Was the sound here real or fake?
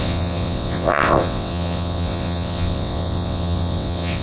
fake